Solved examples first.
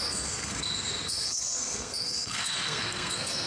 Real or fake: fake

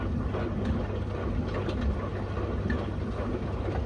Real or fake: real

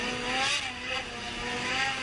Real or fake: real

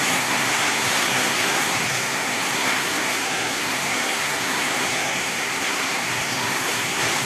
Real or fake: fake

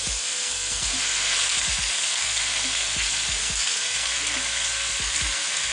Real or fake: fake